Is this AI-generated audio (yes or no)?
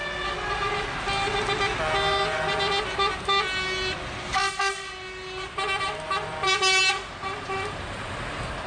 no